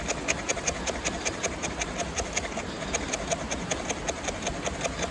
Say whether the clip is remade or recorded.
recorded